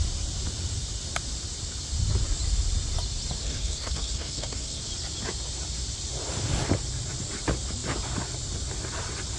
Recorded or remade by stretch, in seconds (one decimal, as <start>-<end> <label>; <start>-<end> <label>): 0.0-3.4 recorded; 3.4-4.8 remade; 4.8-9.4 recorded